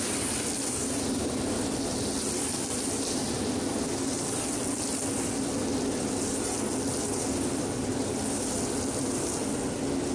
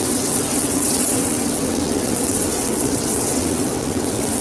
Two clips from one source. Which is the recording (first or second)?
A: first